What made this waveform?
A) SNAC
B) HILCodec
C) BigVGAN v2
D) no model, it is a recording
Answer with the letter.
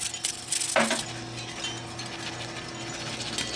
D